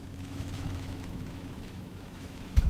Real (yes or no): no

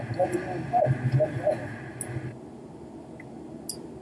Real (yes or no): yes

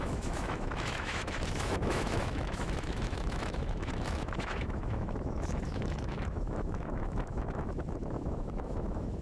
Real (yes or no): no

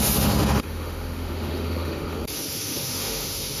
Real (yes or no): no